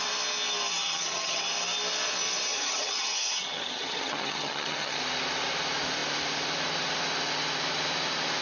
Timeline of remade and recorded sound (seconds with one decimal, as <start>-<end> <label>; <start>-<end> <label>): 0.0-0.8 recorded; 0.8-1.4 remade; 1.4-2.5 recorded; 2.5-5.0 remade; 5.0-8.4 recorded